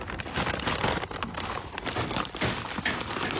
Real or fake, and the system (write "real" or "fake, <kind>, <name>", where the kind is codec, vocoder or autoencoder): real